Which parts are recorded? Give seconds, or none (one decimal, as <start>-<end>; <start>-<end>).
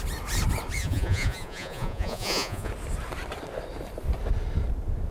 0.0-0.8; 2.7-5.1